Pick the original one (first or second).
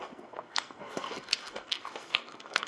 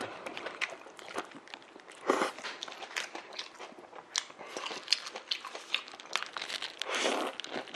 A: second